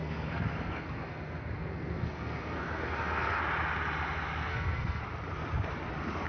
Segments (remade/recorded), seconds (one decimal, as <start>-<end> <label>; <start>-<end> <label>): 0.0-3.4 remade; 3.4-4.5 recorded; 4.5-5.0 remade; 5.0-6.3 recorded